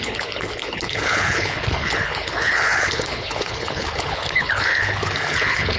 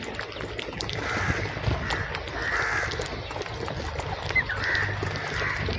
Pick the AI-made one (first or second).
first